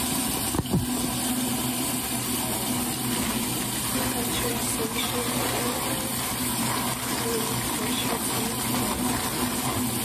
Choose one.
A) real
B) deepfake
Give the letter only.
A